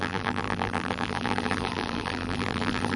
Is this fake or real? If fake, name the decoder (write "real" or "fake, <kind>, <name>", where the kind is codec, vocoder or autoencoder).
fake, vocoder, BigVGAN v2